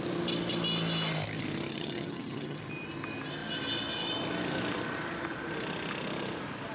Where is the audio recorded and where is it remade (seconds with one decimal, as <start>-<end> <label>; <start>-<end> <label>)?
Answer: 0.0-1.7 recorded; 1.7-2.6 remade; 2.6-6.7 recorded